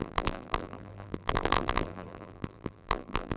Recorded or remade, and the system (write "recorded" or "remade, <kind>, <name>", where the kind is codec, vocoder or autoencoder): remade, vocoder, BigVGAN v2